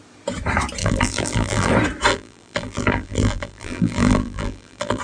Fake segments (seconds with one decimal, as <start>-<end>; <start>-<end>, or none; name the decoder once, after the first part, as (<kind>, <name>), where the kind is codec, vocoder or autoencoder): 0.8-1.7 (vocoder, BigVGAN v2); 2.1-5.0

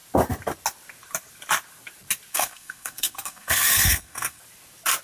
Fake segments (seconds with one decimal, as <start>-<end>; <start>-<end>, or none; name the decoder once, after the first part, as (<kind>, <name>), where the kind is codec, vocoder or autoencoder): 2.3-4.4 (codec, SNAC)

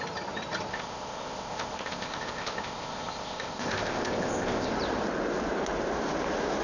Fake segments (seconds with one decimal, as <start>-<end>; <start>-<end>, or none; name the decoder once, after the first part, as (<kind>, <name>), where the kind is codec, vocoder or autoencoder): 0.7-4.7 (codec, ZipCodec)

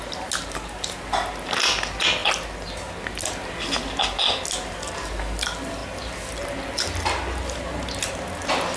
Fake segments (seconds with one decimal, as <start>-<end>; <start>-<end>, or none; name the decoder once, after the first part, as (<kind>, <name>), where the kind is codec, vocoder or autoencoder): none

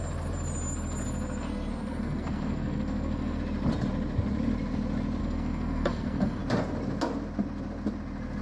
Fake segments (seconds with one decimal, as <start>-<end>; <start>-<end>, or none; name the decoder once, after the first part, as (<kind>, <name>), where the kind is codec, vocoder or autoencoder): 1.5-3.4 (codec, SNAC); 5.2-6.4

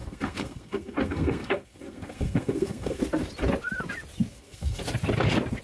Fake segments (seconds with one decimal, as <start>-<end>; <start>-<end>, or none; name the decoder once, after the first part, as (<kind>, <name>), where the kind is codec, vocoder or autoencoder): 0.0-3.0 (codec, SNAC); 4.3-4.8

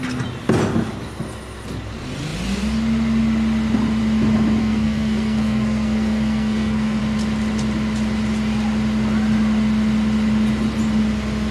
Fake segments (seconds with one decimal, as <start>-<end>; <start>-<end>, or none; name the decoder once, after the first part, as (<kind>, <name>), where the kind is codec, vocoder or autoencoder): 4.6-7.0 (codec, SNAC)